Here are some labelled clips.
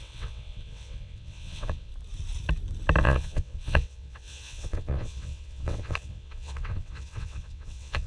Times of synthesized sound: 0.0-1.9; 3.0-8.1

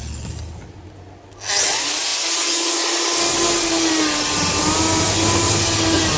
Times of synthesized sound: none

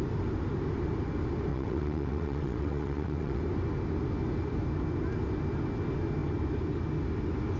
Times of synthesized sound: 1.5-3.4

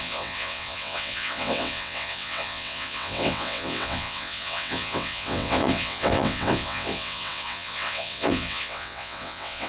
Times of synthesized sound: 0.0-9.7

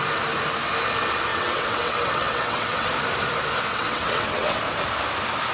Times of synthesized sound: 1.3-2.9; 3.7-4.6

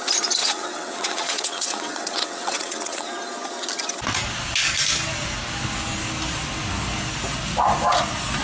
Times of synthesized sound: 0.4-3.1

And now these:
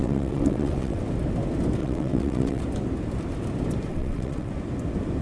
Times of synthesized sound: 0.0-1.0; 1.8-2.6; 3.9-4.5

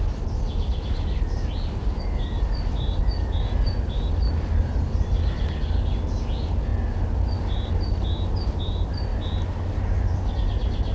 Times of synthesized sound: none